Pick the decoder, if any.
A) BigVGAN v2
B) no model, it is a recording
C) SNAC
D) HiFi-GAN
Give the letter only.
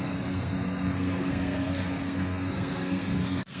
C